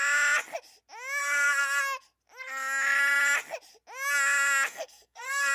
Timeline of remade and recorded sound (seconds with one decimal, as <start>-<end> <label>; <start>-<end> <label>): 0.0-1.2 recorded; 1.2-1.8 remade; 1.8-4.7 recorded; 4.7-5.5 remade

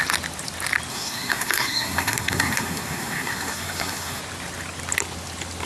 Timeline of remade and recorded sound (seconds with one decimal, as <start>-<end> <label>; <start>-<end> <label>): 0.0-0.9 recorded; 0.9-4.2 remade; 4.2-5.7 recorded

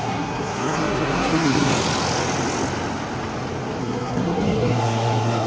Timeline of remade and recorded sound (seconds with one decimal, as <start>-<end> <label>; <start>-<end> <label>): 0.0-1.7 remade; 1.7-3.8 recorded; 3.8-5.5 remade

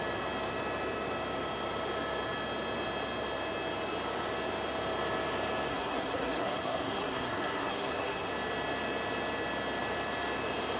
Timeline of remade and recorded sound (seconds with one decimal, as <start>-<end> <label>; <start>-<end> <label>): 0.0-5.7 recorded; 5.7-8.3 remade; 8.3-10.8 recorded

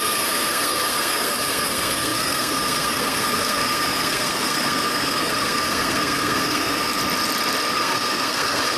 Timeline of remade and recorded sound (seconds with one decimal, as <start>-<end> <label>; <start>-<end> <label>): 0.0-7.0 remade; 7.0-7.7 recorded; 7.7-8.8 remade